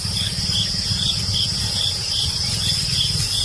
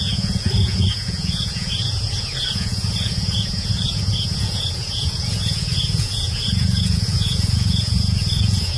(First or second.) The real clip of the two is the first